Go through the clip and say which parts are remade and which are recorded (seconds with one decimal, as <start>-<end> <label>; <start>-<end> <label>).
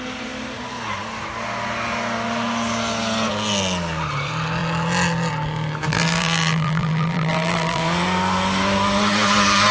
0.0-5.9 recorded; 5.9-7.8 remade; 7.8-9.7 recorded